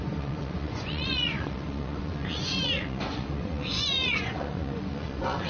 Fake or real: fake